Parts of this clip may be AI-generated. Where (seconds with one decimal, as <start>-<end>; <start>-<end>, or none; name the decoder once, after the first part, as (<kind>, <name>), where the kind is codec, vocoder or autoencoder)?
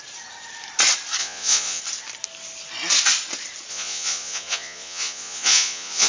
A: 1.2-1.8 (vocoder, Vocos); 3.7-6.1